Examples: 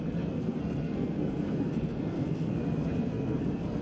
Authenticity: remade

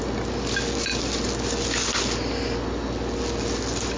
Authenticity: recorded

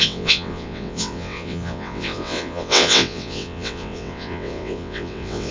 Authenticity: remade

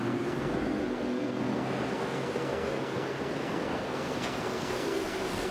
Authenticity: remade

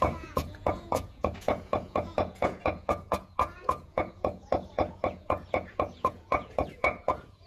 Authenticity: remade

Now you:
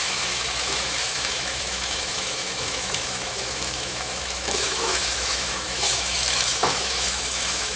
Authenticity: remade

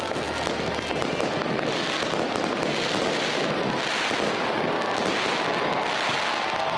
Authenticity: recorded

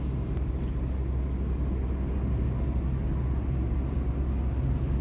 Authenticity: recorded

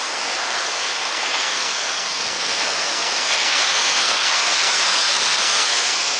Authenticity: remade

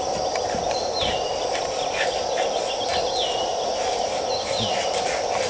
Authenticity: recorded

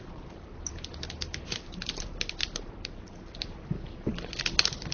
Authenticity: recorded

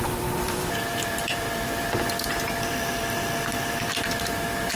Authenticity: remade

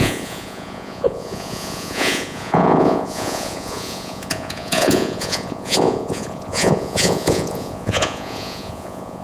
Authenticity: remade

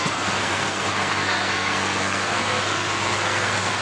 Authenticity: remade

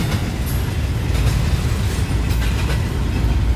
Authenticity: recorded